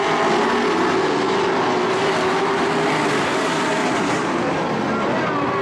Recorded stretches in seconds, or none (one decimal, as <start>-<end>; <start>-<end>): 0.0-3.8; 4.5-5.6